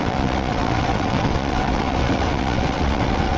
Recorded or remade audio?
remade